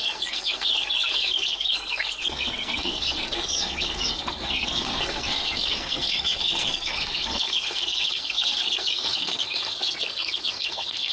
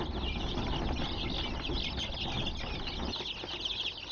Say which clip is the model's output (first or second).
first